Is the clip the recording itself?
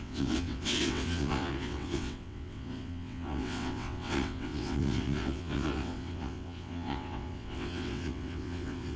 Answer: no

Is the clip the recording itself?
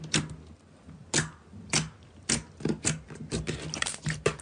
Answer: yes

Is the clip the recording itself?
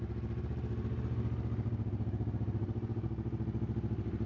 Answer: yes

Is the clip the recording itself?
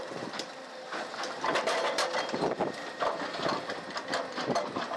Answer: no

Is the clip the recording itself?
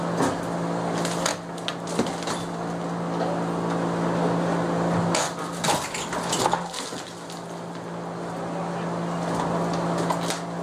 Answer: yes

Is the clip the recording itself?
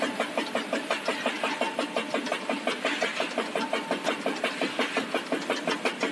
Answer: yes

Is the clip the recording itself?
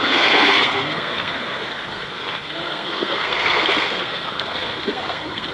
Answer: no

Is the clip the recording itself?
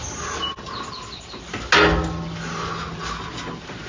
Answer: yes